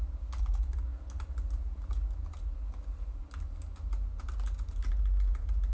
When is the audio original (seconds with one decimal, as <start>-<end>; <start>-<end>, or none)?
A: 0.0-5.7